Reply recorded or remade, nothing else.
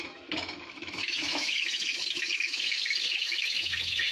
remade